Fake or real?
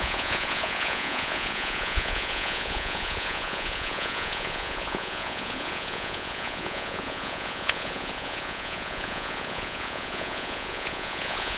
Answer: fake